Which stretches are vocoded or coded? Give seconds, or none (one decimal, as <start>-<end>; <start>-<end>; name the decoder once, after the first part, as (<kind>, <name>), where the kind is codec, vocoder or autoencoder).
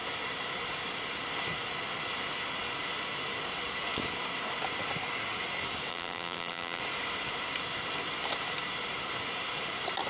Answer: 5.9-6.8 (vocoder, BigVGAN v2)